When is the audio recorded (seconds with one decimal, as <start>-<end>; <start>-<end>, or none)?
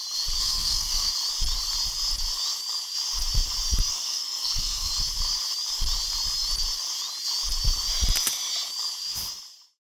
0.0-0.4; 1.1-3.9; 4.9-9.9